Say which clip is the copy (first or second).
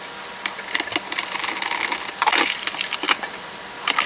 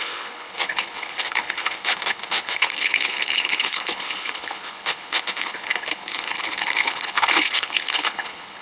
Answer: second